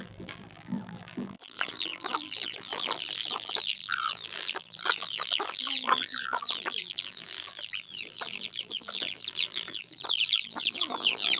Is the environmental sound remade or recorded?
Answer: remade